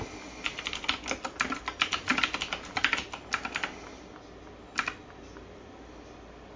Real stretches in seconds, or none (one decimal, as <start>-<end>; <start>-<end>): 0.0-6.6